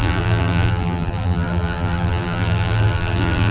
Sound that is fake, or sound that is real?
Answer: fake